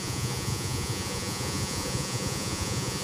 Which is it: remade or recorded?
remade